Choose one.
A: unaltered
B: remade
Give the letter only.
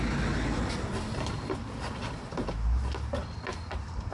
A